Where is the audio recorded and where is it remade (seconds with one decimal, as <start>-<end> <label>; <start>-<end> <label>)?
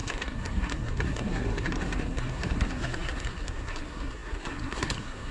0.0-5.3 remade